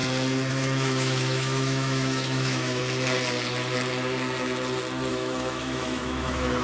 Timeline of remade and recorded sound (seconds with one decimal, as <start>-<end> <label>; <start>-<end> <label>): 0.0-0.5 recorded; 0.5-2.8 remade; 2.8-5.1 recorded; 5.1-6.6 remade